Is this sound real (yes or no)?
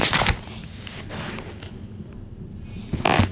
yes